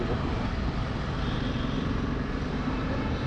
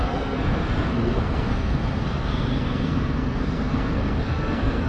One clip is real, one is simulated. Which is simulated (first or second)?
second